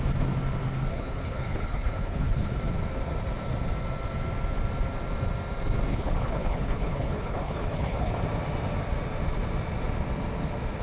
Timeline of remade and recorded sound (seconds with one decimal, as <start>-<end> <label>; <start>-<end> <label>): 0.0-0.9 recorded; 0.9-2.6 remade; 2.6-5.9 recorded; 5.9-8.2 remade; 8.2-10.8 recorded